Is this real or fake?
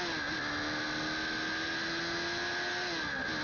real